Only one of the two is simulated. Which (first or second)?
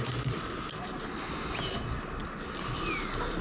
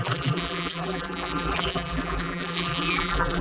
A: second